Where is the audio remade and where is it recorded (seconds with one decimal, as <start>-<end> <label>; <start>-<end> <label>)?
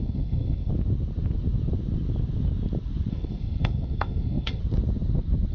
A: 0.0-0.7 remade; 0.7-3.1 recorded; 3.1-4.6 remade; 4.6-5.5 recorded